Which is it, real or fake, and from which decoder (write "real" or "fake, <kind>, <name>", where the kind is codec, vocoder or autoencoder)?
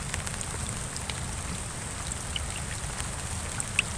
real